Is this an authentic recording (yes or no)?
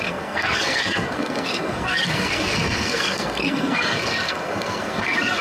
no